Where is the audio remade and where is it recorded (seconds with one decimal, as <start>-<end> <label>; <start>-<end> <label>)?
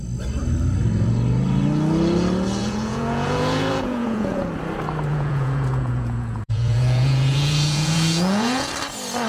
0.0-2.6 recorded; 2.6-4.4 remade; 4.4-5.1 recorded; 5.1-8.7 remade; 8.7-9.3 recorded